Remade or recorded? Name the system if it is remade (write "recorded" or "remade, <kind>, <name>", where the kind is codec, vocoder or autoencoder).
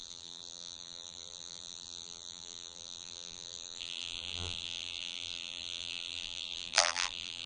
remade, vocoder, BigVGAN v2